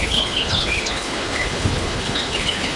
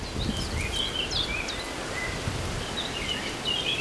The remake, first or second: first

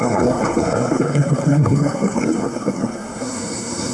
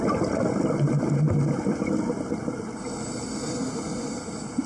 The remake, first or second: first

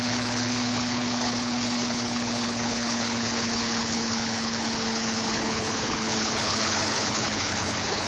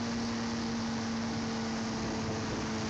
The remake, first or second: first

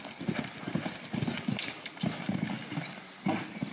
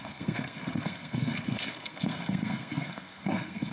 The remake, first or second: second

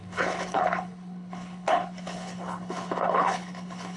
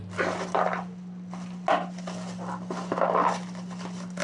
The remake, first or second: first